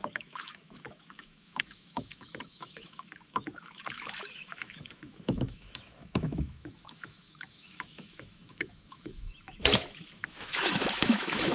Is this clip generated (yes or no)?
yes